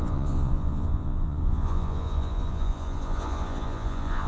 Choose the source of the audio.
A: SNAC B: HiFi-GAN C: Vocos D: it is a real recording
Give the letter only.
C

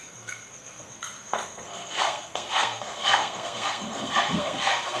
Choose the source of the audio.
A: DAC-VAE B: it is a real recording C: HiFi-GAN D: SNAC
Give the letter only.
D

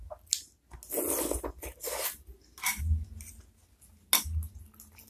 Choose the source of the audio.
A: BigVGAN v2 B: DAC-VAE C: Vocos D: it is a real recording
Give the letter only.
D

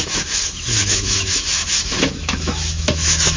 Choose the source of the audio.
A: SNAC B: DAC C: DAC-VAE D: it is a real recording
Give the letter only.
C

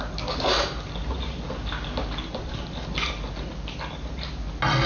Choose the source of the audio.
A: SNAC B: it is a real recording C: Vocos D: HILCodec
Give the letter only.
B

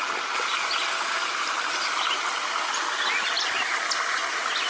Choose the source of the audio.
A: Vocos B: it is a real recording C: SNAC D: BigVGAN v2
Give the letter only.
B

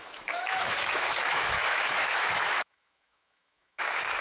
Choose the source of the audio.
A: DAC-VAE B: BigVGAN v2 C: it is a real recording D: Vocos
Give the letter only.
A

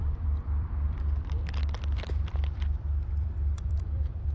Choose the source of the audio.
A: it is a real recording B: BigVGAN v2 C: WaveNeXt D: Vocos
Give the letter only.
B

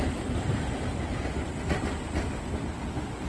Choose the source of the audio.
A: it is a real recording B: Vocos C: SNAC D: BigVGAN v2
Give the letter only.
A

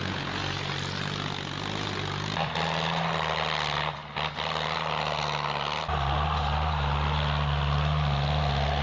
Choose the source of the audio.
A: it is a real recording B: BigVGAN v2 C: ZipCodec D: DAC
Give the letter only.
A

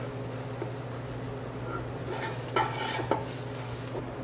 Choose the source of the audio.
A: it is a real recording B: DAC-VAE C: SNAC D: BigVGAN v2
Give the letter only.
A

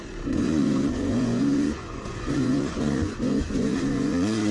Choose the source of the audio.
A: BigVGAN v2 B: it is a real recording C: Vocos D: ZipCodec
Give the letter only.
C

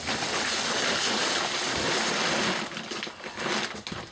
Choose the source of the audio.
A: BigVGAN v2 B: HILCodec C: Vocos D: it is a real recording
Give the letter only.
D